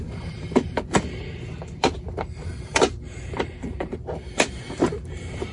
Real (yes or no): no